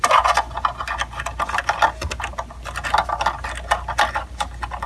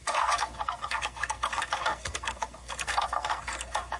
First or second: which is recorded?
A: first